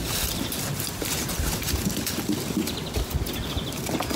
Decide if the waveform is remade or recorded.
recorded